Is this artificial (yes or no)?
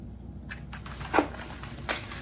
no